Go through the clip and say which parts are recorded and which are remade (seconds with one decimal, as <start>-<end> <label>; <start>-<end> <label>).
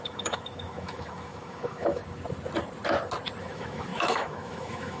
0.0-2.0 remade; 2.0-3.4 recorded; 3.4-5.0 remade